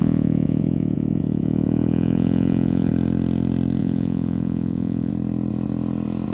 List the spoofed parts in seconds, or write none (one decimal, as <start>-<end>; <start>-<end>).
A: 0.0-2.9; 3.8-5.1